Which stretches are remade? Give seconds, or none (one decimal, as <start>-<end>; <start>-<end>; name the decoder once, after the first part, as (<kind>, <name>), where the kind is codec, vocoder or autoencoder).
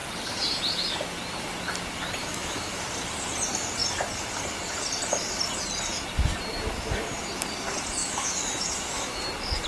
2.2-2.8 (autoencoder, DAC-VAE); 8.0-9.2